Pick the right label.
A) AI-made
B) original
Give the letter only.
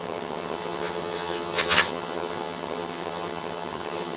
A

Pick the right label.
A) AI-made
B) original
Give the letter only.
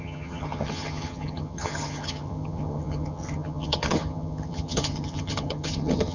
A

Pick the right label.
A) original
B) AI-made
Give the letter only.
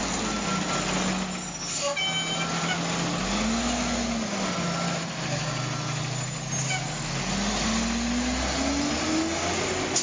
A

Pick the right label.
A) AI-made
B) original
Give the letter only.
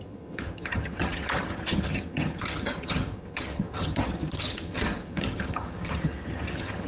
A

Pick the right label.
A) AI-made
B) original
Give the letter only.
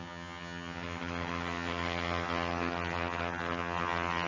A